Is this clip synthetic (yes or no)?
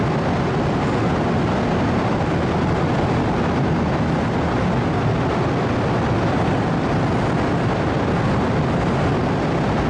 no